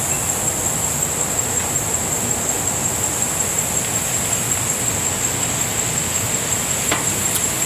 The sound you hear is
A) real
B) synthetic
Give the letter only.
A